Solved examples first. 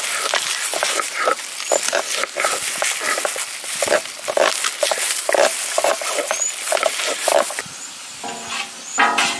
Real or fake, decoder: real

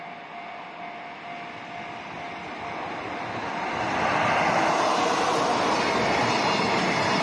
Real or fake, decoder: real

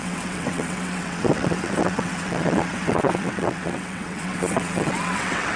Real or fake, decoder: fake, vocoder, WaveNeXt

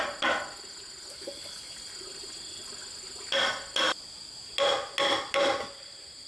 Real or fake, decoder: real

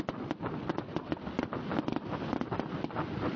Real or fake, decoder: real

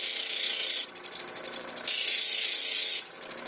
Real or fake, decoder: real